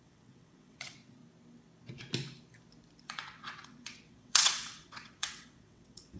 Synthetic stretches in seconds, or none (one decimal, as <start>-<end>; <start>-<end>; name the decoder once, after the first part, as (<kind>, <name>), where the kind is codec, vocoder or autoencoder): 0.0-1.2 (vocoder, WaveNeXt); 3.0-6.2